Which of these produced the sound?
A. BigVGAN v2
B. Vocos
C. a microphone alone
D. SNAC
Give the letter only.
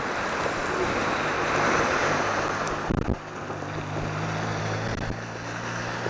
C